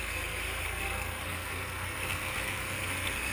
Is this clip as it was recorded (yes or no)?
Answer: no